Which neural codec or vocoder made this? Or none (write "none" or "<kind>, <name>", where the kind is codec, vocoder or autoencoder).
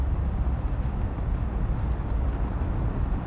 none